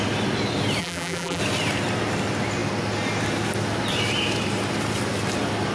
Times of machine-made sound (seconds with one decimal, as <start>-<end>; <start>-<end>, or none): 0.8-1.4